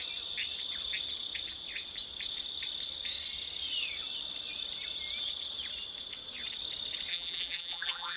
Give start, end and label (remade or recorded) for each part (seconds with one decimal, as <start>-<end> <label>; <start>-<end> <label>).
0.0-7.1 recorded; 7.1-8.2 remade